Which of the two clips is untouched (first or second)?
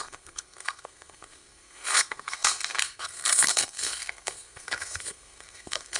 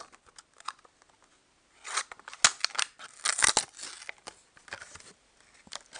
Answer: second